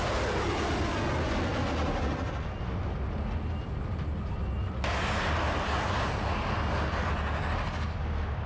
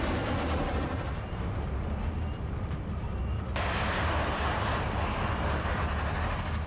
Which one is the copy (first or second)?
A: second